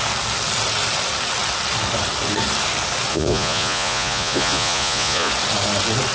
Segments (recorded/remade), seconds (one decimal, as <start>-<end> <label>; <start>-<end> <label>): 0.0-3.1 recorded; 3.1-5.3 remade; 5.3-6.1 recorded